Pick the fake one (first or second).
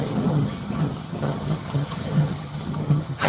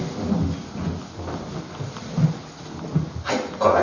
first